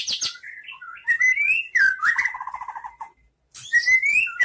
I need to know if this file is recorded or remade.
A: recorded